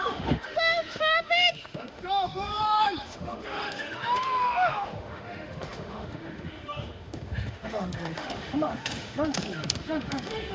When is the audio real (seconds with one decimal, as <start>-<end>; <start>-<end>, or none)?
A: none